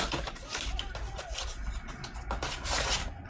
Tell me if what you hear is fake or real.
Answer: real